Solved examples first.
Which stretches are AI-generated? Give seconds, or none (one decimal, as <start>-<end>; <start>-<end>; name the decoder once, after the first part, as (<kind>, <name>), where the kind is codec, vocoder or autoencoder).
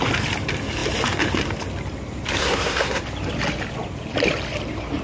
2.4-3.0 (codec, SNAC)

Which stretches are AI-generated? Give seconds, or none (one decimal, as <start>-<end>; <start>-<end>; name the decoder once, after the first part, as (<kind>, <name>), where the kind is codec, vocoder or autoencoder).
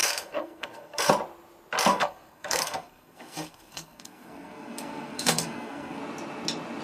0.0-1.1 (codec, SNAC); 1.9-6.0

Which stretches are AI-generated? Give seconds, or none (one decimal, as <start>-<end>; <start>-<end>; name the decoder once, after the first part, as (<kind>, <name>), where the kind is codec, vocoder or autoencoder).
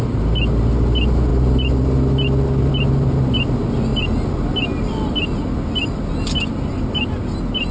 none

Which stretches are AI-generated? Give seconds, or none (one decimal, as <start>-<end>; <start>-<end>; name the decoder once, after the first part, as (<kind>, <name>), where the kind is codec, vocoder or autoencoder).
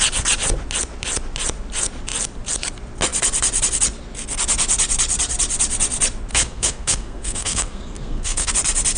6.3-8.5 (codec, SNAC)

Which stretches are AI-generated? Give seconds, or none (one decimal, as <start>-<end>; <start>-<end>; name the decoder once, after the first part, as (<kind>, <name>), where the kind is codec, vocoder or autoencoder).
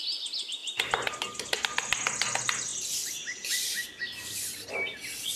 none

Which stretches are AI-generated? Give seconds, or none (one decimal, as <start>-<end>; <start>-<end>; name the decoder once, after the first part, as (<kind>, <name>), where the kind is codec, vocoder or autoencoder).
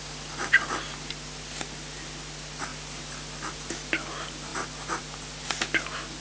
none